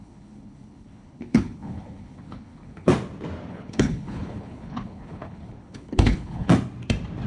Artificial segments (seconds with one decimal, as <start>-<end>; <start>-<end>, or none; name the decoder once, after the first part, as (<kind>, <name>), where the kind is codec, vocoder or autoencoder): 0.0-2.9 (codec, HILCodec); 3.5-6.5